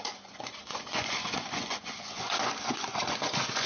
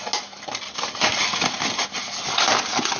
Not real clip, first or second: first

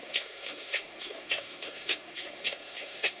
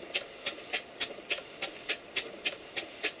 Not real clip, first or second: first